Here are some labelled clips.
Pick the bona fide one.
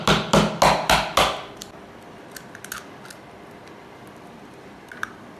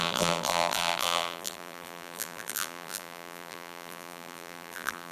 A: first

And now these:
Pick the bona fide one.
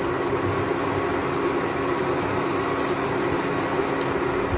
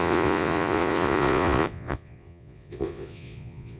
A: first